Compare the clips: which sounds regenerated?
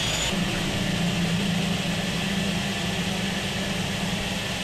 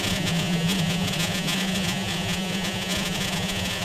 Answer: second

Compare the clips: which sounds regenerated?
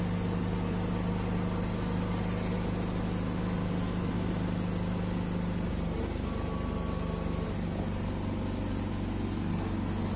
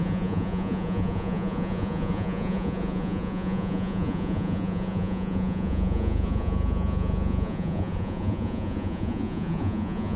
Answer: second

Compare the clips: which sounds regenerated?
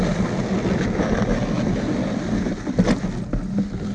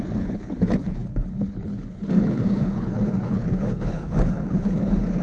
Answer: second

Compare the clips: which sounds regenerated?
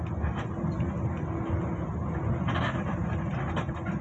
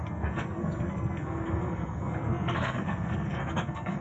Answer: second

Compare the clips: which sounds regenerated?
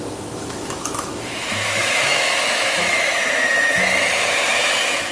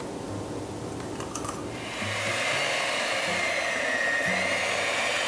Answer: first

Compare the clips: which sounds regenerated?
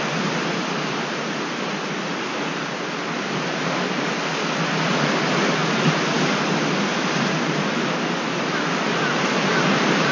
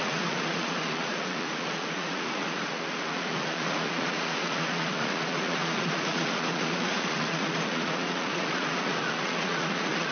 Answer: second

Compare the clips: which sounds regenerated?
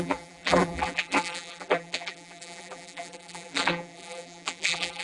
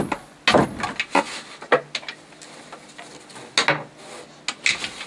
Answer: first